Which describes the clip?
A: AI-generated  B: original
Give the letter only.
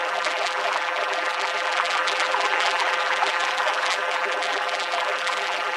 A